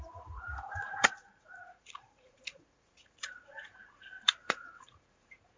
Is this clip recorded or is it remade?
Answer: remade